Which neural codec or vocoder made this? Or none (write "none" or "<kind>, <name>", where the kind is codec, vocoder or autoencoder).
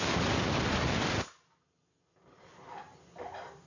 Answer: none